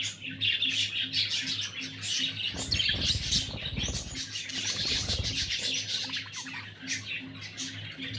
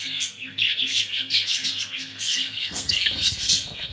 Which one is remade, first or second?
second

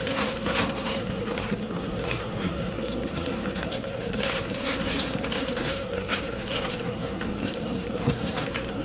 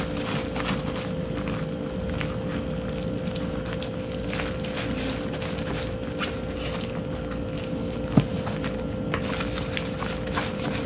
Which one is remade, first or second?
first